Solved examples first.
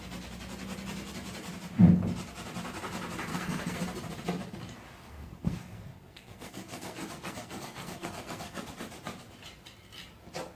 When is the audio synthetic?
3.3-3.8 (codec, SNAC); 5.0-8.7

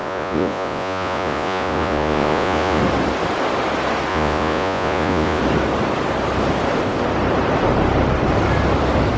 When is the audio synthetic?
0.0-2.8 (vocoder, Vocos); 4.1-5.4

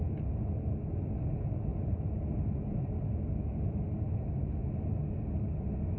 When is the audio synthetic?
1.7-2.2 (vocoder, BigVGAN v2)

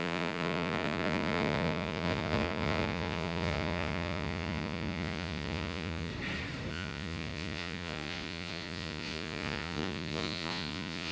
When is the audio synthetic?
0.0-6.1 (vocoder, Vocos); 6.7-11.1

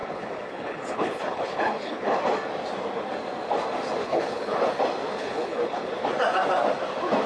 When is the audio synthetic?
0.0-2.2 (codec, HILCodec); 4.0-4.7; 5.2-5.9

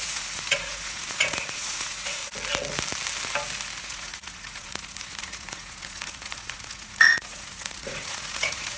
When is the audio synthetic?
0.0-2.2 (vocoder, Vocos); 3.8-8.8